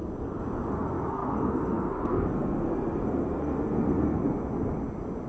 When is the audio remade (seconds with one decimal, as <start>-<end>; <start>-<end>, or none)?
0.7-4.2